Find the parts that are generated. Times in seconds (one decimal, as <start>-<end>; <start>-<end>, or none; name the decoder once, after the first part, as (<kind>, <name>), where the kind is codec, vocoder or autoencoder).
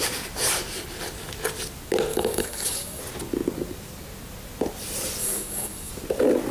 2.1-3.0 (codec, DAC); 5.2-5.9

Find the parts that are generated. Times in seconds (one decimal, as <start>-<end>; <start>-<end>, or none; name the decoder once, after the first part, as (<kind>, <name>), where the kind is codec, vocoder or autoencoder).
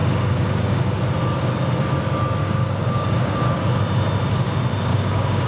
0.0-1.0 (codec, DAC); 2.4-3.6; 4.9-5.5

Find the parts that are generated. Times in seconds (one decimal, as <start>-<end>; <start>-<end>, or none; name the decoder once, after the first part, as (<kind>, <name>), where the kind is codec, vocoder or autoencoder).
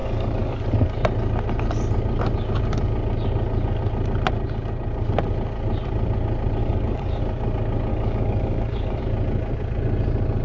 0.0-0.6 (codec, DAC); 6.6-7.2; 7.9-9.0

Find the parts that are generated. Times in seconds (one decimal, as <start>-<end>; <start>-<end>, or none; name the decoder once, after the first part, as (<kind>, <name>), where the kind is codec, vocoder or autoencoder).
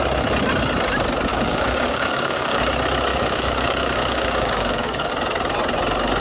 1.3-2.6 (codec, DAC); 3.1-5.1